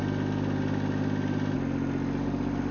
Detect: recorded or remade recorded